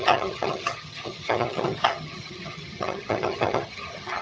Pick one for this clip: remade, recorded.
remade